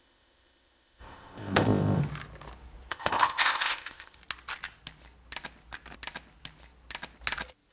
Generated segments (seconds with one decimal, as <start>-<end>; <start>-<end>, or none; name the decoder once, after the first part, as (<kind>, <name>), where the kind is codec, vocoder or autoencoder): 0.0-2.0 (codec, ZipCodec); 2.9-4.2